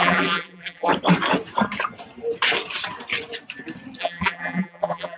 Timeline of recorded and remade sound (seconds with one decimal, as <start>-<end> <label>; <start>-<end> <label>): 0.0-0.9 remade; 0.9-4.0 recorded; 4.0-5.2 remade